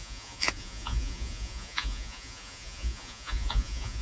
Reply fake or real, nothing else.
fake